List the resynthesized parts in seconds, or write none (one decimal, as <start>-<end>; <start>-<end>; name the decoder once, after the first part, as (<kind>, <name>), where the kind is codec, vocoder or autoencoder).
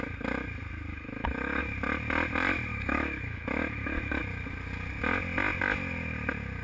0.9-1.6 (autoencoder, DAC-VAE); 2.7-4.2